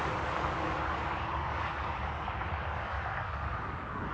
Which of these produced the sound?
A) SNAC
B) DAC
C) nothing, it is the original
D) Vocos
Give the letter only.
B